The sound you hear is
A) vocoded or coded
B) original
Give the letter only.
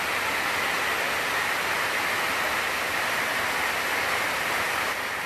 B